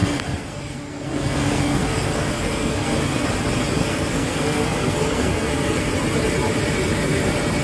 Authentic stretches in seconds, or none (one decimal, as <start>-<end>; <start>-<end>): 3.3-3.8; 5.9-7.6